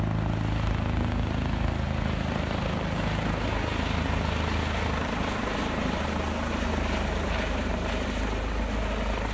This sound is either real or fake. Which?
real